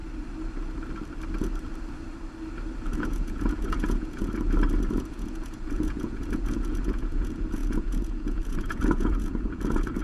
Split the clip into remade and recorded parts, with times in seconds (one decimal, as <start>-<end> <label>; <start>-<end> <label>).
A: 0.0-2.9 recorded; 2.9-4.2 remade; 4.2-4.9 recorded; 4.9-10.0 remade